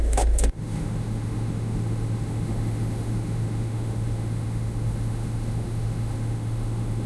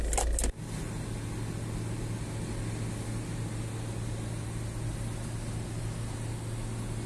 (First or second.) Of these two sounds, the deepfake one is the first